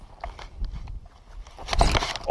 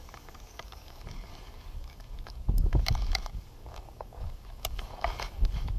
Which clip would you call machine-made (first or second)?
second